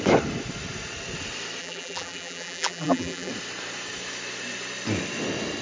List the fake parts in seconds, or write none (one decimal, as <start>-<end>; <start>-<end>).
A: 1.6-3.3